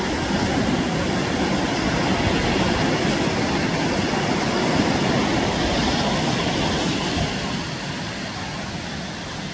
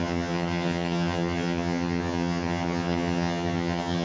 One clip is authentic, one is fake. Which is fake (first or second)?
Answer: second